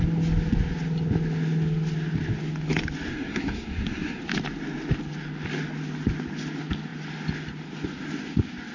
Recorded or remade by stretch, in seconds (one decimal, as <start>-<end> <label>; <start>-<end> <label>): 0.0-3.1 recorded; 3.1-4.2 remade; 4.2-8.7 recorded